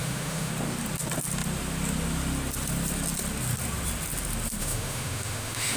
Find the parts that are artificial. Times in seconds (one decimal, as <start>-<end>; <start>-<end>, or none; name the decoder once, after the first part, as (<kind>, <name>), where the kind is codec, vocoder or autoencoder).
0.0-0.5 (autoencoder, DAC-VAE); 4.6-5.8